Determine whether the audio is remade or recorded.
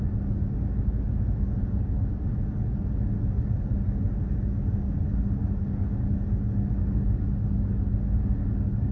recorded